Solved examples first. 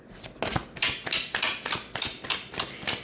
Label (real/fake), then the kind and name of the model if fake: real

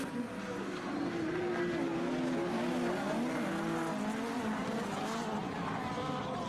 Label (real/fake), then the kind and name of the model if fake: real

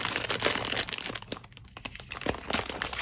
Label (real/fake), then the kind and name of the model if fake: real